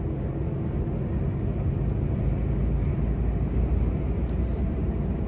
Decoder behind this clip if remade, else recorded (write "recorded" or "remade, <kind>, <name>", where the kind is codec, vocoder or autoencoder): recorded